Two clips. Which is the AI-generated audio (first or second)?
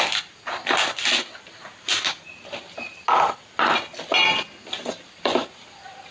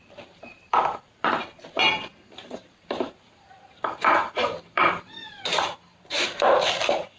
second